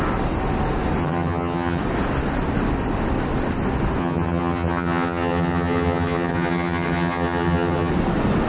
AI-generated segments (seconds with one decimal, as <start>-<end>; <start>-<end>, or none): 1.0-1.8; 4.0-7.9